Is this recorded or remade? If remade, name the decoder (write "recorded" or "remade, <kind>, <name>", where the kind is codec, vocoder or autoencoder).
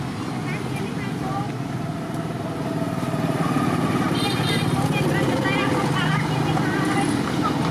recorded